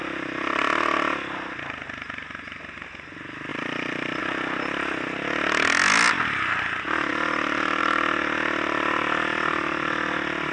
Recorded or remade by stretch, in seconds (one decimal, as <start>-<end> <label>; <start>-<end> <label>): 0.0-3.5 recorded; 3.5-4.2 remade; 4.2-7.1 recorded; 7.1-7.8 remade; 7.8-10.5 recorded